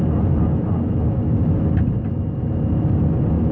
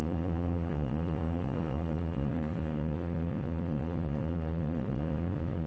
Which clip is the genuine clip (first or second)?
first